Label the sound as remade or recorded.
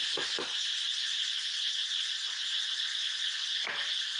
recorded